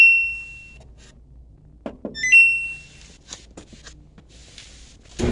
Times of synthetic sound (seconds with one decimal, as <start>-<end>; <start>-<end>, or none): none